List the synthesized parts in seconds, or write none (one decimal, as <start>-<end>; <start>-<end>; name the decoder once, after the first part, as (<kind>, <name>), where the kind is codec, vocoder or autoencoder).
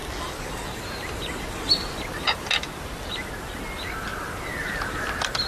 none